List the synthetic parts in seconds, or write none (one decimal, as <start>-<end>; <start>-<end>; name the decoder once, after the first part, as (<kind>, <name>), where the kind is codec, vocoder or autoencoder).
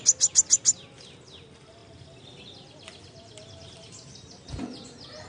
none